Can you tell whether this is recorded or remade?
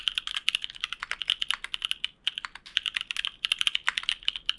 recorded